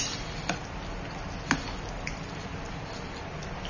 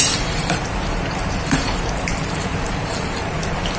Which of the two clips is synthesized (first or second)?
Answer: second